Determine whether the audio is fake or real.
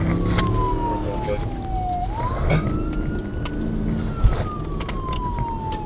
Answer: real